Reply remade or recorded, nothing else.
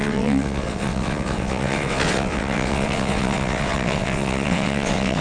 remade